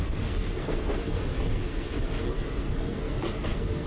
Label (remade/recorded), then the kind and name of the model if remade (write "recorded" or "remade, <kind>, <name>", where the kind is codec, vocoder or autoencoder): remade, codec, SNAC